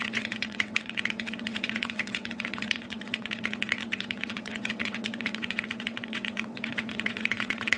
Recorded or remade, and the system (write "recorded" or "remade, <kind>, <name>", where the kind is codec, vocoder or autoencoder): remade, vocoder, WaveNeXt